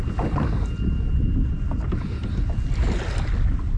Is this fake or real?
real